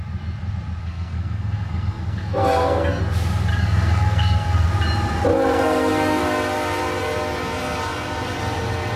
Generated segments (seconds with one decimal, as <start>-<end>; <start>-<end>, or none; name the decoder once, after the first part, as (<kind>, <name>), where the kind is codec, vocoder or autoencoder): 0.8-3.0 (codec, SNAC); 3.5-4.7; 5.3-6.2

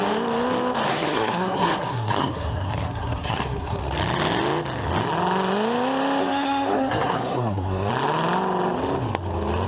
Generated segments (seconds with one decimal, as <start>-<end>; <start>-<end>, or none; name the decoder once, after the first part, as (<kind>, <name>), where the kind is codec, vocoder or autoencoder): 0.9-3.8 (codec, SNAC); 6.2-7.9

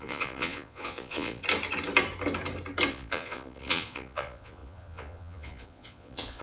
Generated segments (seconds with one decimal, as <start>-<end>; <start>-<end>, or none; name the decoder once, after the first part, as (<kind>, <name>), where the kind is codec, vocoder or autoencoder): 0.0-1.4 (vocoder, Vocos); 2.9-6.4

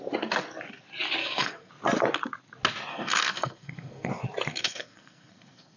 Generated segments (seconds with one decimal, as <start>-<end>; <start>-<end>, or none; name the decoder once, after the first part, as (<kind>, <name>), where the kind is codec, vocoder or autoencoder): 1.2-1.7 (codec, SNAC); 2.9-4.1; 4.5-5.8

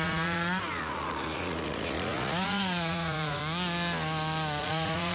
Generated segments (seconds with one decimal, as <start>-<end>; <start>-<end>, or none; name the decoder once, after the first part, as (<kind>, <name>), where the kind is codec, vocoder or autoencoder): 0.0-3.4 (vocoder, Vocos); 4.6-5.1

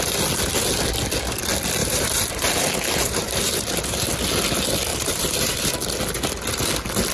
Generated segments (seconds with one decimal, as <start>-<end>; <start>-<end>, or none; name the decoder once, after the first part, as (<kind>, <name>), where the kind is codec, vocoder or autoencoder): 1.8-4.1 (vocoder, BigVGAN v2); 4.9-5.7

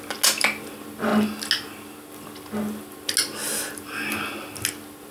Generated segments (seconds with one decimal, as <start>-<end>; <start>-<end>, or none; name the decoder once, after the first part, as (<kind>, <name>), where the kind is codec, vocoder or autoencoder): none

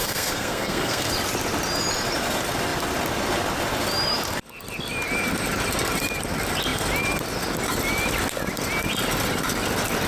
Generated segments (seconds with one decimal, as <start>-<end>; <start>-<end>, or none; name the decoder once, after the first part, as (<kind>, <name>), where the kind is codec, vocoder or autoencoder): 0.0-1.1 (codec, SNAC)